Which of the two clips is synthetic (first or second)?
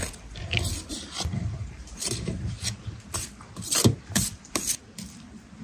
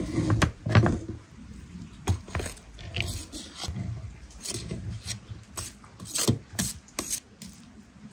first